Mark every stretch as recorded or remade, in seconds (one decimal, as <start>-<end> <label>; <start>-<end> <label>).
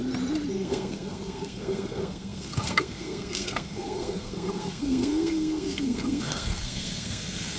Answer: 0.0-0.5 recorded; 0.5-7.6 remade